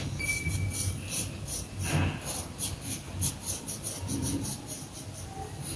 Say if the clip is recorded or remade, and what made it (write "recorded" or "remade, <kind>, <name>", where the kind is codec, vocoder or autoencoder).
recorded